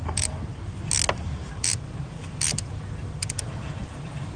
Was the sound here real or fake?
real